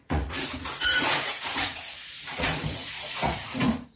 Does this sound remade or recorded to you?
remade